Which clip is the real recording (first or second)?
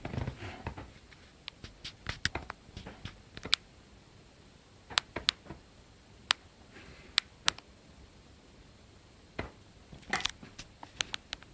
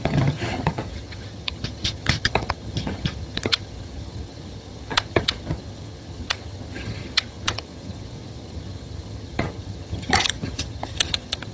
first